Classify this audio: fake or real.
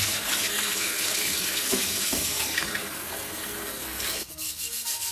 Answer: fake